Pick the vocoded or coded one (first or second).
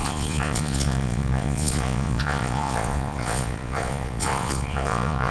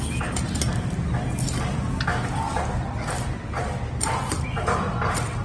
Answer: first